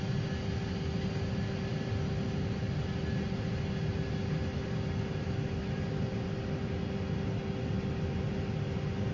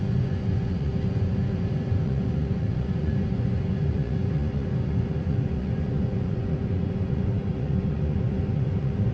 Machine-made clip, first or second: second